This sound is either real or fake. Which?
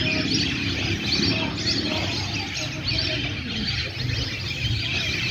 real